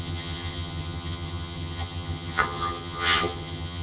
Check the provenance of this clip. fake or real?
fake